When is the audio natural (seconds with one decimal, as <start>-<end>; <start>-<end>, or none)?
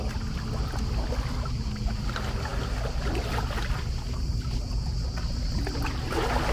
0.0-6.5